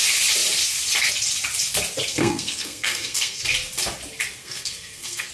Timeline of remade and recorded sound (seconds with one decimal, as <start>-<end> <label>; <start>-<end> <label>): 0.0-2.1 recorded; 2.1-3.4 remade; 3.4-4.4 recorded; 4.4-5.3 remade